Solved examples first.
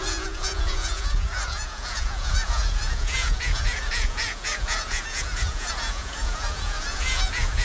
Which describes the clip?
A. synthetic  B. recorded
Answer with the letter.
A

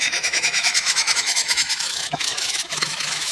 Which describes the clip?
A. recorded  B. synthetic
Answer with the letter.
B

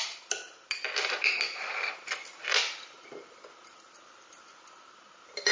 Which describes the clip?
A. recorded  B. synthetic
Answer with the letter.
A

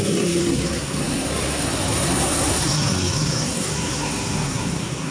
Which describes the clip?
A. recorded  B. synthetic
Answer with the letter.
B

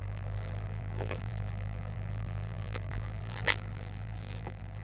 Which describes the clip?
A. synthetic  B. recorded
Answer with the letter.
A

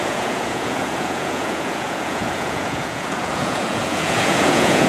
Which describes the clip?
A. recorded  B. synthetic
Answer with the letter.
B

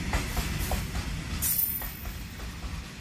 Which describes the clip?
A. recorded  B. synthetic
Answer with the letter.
A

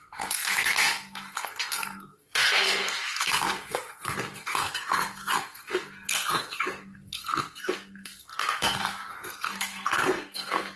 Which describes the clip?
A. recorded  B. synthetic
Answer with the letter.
B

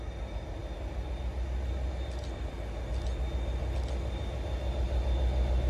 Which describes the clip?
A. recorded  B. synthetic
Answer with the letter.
A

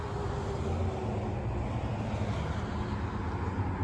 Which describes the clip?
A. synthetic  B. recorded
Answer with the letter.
B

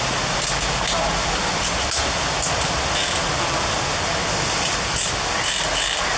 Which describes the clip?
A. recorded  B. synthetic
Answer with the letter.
A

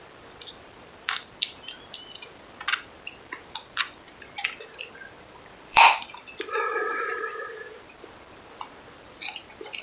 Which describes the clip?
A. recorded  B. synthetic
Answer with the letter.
B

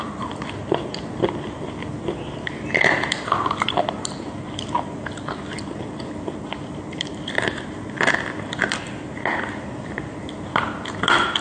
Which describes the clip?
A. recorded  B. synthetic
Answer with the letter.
A